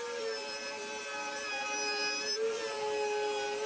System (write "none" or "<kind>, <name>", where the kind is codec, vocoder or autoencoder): none